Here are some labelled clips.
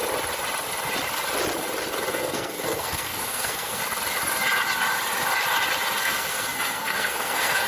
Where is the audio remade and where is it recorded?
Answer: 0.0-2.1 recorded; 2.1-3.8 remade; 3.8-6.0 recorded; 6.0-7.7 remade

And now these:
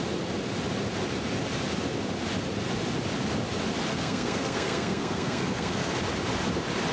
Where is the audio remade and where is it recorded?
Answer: 0.0-3.9 recorded; 3.9-5.9 remade; 5.9-6.9 recorded

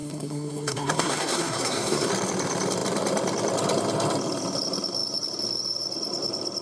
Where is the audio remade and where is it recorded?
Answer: 0.0-2.1 remade; 2.1-6.6 recorded

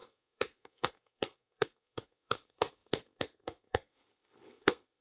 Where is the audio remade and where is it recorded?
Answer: 0.0-5.0 remade

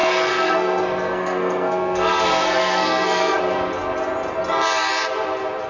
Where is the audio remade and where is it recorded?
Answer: 0.0-3.4 remade; 3.4-5.7 recorded

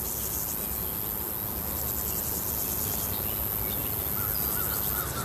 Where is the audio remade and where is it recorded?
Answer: 0.0-5.2 recorded

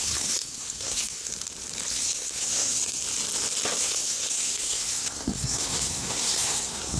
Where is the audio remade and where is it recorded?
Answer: 0.0-1.3 remade; 1.3-1.9 recorded; 1.9-3.0 remade; 3.0-3.8 recorded; 3.8-7.0 remade

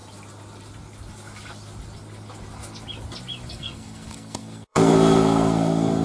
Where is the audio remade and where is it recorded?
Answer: 0.0-3.5 recorded; 3.5-6.0 remade